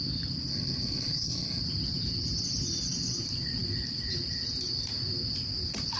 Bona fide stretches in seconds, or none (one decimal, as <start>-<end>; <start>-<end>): 0.0-0.5; 1.6-6.0

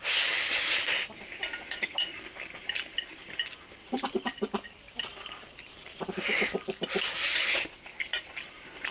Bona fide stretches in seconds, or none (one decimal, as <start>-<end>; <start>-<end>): 0.0-8.9